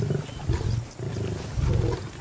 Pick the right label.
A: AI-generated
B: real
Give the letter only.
B